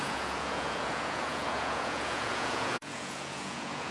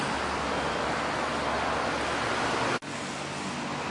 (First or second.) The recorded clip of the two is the second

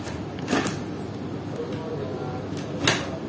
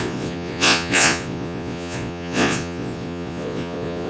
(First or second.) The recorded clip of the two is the first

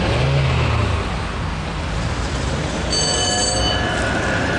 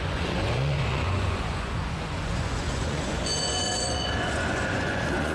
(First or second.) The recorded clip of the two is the first